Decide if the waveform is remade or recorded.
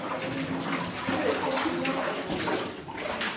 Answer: recorded